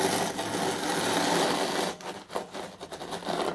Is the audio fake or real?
real